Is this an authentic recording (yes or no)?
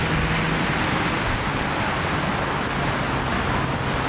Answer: yes